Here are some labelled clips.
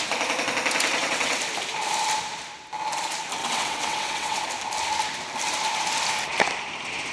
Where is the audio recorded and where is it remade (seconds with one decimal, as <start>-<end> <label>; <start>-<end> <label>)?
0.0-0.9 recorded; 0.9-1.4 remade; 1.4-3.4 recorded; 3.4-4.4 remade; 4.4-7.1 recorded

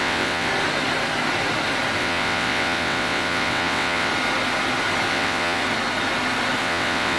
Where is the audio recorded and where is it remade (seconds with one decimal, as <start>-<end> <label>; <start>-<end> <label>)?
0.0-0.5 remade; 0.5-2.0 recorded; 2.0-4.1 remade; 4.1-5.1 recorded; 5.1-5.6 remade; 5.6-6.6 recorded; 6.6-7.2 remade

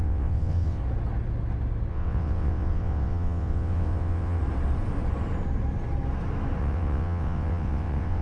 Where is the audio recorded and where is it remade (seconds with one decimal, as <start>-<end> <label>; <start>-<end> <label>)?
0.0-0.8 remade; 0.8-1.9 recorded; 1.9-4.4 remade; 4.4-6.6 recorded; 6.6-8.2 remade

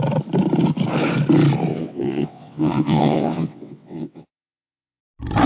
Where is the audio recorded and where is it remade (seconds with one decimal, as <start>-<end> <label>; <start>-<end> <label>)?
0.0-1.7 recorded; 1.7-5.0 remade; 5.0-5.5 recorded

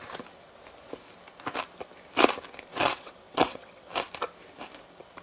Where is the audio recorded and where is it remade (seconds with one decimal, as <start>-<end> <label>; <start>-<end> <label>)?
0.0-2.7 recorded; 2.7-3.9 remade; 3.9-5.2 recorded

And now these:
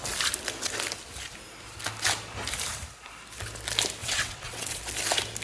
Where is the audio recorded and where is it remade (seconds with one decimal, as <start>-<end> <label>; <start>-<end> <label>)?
0.0-4.0 recorded; 4.0-4.8 remade; 4.8-5.4 recorded

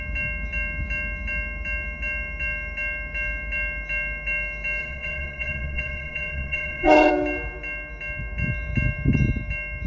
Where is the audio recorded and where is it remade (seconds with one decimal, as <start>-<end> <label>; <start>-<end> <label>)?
0.0-4.8 recorded; 4.8-7.1 remade; 7.1-9.9 recorded

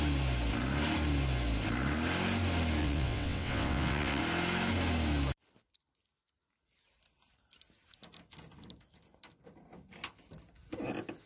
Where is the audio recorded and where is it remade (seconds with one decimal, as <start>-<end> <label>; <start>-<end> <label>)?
0.0-2.8 recorded; 2.8-4.2 remade; 4.2-11.3 recorded